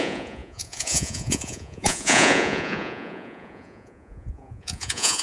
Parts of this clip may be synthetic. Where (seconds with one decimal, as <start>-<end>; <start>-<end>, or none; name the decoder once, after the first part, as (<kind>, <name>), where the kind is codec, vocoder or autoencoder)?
0.0-5.2 (vocoder, Vocos)